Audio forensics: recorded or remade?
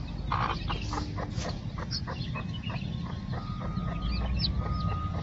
recorded